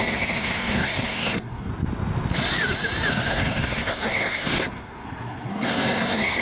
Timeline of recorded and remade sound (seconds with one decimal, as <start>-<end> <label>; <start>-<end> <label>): 0.0-1.7 remade; 1.7-3.1 recorded; 3.1-6.4 remade